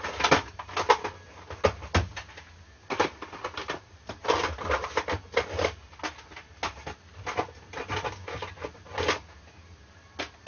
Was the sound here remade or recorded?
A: recorded